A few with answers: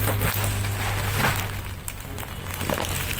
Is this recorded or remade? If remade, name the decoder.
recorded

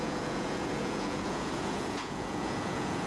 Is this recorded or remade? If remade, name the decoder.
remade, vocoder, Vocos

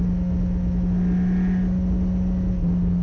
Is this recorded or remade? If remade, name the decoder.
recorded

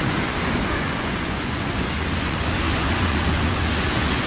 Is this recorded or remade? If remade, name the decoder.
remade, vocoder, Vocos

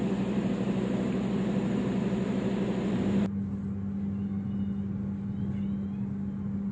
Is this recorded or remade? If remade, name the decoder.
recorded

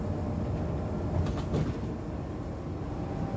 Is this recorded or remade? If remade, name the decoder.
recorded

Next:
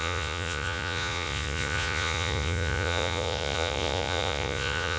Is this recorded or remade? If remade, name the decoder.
remade, vocoder, Vocos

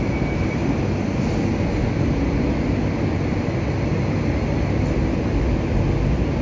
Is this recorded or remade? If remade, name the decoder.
recorded